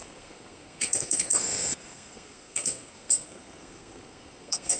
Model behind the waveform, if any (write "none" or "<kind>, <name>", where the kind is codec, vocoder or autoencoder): codec, SNAC